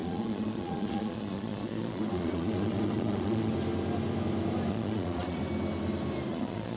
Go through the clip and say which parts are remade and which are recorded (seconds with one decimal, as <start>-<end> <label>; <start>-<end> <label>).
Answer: 0.0-3.5 remade; 3.5-4.7 recorded; 4.7-5.4 remade; 5.4-6.3 recorded; 6.3-6.8 remade